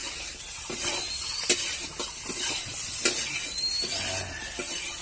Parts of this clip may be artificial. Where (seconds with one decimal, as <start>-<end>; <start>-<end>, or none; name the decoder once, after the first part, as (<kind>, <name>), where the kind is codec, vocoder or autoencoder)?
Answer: none

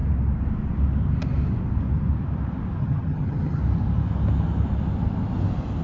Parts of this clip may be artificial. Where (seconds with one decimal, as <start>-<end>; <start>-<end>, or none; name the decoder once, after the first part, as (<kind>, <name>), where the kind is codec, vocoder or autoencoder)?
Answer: 2.8-3.6 (vocoder, HiFi-GAN)